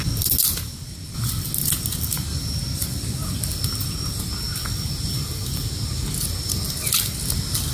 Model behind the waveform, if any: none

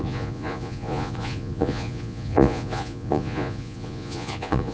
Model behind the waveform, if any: vocoder, Vocos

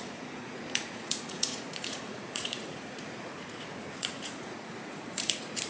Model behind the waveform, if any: vocoder, Vocos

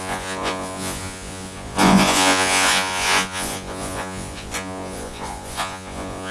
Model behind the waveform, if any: vocoder, Vocos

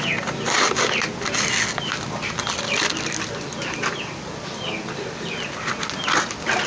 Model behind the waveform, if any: none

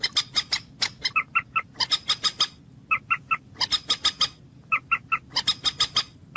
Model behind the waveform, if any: none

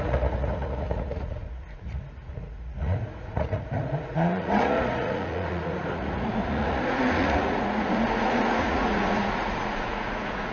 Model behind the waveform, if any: vocoder, Vocos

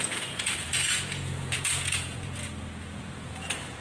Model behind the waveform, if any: vocoder, Vocos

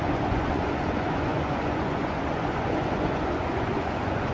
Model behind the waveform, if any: vocoder, Vocos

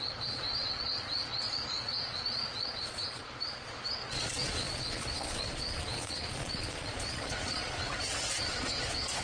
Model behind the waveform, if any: vocoder, Vocos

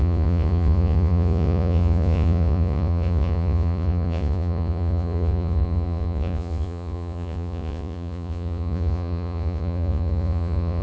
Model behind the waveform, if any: vocoder, Vocos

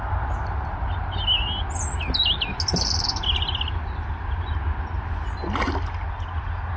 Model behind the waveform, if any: none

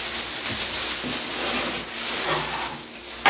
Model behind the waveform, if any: none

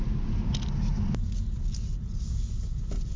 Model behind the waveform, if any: none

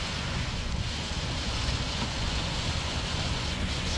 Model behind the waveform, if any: vocoder, Vocos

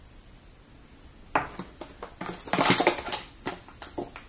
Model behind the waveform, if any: none